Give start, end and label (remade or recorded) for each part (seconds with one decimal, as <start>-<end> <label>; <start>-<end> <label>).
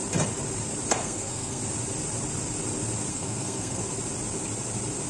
0.0-1.0 recorded; 1.0-1.6 remade; 1.6-3.1 recorded; 3.1-3.8 remade; 3.8-5.1 recorded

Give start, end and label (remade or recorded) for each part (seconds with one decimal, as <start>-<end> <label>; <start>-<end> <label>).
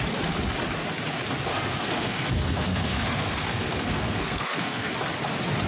0.0-1.5 recorded; 1.5-4.9 remade; 4.9-5.7 recorded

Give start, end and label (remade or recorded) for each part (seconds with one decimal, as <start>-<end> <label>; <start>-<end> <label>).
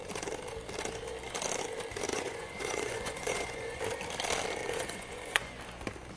0.0-2.1 recorded; 2.1-3.8 remade; 3.8-4.6 recorded; 4.6-5.6 remade; 5.6-6.2 recorded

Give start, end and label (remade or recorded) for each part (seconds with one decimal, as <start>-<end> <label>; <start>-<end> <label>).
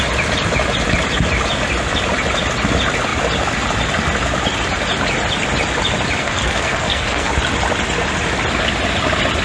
0.0-6.2 recorded; 6.2-7.3 remade; 7.3-9.4 recorded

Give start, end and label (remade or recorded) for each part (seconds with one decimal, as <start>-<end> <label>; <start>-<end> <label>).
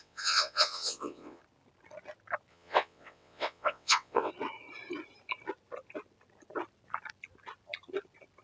0.0-1.4 remade; 1.4-2.5 recorded; 2.5-4.3 remade; 4.3-8.4 recorded